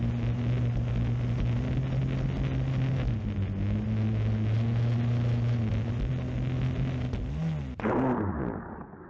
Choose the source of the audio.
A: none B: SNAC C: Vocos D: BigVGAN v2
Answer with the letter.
A